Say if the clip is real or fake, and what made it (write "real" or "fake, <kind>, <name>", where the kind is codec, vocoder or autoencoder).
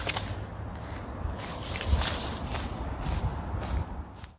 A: real